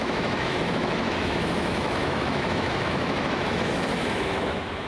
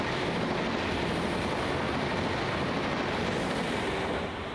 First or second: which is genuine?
second